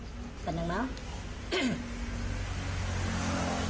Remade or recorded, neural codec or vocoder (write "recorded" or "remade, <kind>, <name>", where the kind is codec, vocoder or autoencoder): recorded